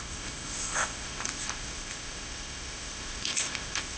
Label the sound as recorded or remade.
remade